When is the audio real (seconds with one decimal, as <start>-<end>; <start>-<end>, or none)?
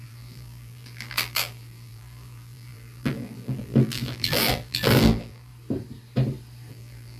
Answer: 5.5-6.7